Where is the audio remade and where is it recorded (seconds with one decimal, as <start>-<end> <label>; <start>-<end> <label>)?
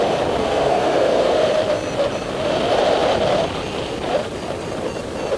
0.0-0.4 recorded; 0.4-1.5 remade; 1.5-5.4 recorded